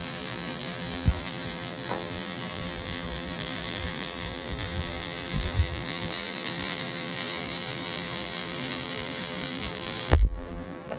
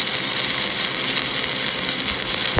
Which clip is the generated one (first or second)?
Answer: first